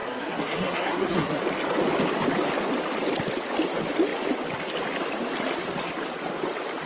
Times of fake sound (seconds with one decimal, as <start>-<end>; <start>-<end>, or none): 0.0-1.4